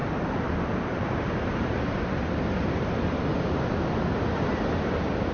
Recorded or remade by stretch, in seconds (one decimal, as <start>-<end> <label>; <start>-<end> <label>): 0.0-2.1 remade; 2.1-5.3 recorded